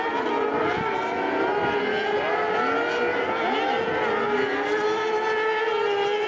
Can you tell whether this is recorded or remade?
recorded